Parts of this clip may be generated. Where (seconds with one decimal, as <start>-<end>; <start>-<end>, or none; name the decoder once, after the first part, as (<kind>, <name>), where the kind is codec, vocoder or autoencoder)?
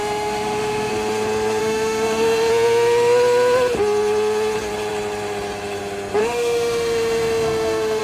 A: 0.0-0.9 (autoencoder, DAC-VAE); 1.6-2.5; 6.2-8.0